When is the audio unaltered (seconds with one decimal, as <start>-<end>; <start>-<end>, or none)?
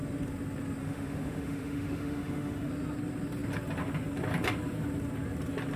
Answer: 0.0-0.8; 2.7-5.8